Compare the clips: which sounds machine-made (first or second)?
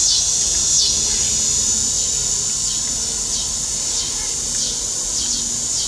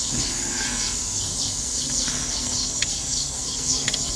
second